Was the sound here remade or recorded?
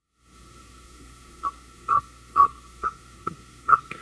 remade